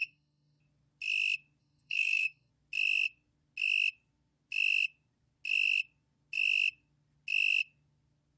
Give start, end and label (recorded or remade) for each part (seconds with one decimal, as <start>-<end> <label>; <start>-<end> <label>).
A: 0.0-0.6 remade; 0.6-1.6 recorded; 1.6-2.5 remade; 2.5-8.4 recorded